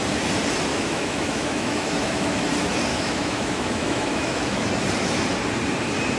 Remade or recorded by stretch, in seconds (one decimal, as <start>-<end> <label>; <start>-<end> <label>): 0.0-0.7 recorded; 0.7-2.5 remade; 2.5-2.9 recorded; 2.9-4.7 remade; 4.7-6.2 recorded